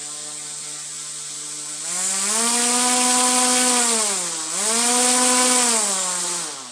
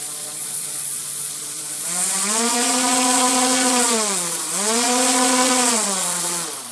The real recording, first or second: first